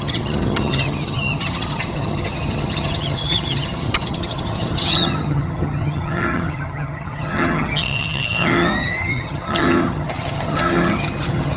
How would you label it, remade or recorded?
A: remade